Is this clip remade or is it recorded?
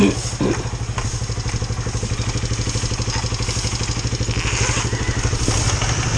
recorded